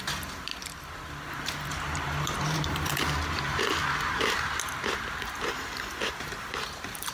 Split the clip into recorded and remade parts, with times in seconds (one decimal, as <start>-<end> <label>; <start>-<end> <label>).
0.0-0.5 remade; 0.5-1.3 recorded; 1.3-7.1 remade